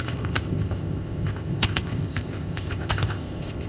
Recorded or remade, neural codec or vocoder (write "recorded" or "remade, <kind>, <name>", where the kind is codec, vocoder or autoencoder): remade, codec, ZipCodec